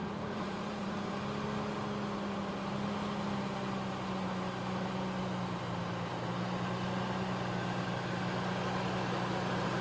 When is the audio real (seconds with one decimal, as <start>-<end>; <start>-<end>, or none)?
1.1-9.8